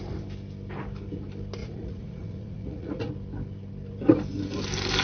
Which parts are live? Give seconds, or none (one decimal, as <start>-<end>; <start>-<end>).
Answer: 0.0-1.6; 3.1-5.0